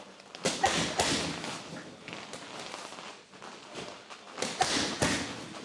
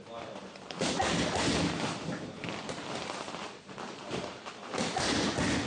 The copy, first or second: second